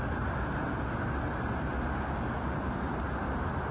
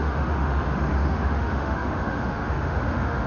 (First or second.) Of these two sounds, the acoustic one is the first